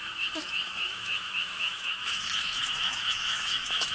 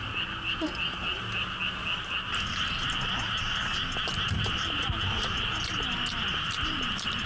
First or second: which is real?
second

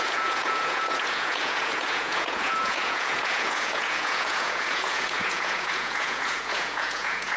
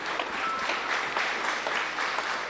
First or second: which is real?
second